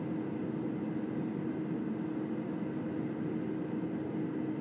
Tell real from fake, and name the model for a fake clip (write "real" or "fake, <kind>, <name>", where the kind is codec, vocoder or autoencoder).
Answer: real